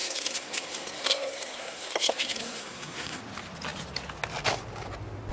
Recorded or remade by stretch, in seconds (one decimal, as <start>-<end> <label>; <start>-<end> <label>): 0.0-3.2 remade; 3.2-5.3 recorded